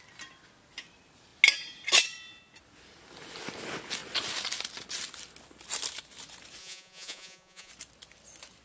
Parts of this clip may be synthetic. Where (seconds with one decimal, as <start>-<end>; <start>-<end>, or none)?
6.6-7.7